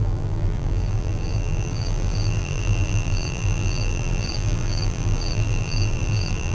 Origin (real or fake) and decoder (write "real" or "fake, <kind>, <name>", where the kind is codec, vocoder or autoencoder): fake, vocoder, BigVGAN v2